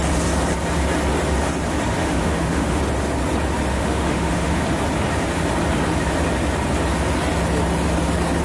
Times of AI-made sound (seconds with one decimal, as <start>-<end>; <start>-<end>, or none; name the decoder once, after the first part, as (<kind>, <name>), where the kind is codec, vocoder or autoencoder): 2.0-2.8 (autoencoder, DAC-VAE); 3.7-4.6